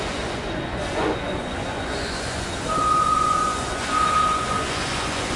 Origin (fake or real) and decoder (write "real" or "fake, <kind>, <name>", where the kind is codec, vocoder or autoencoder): fake, vocoder, Vocos